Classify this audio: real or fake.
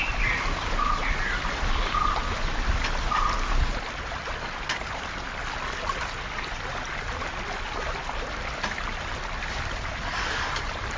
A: fake